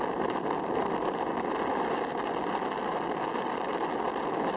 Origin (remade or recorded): recorded